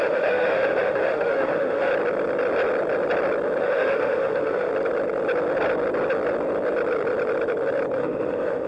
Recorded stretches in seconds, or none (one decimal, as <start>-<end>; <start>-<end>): 1.9-3.6; 4.7-8.0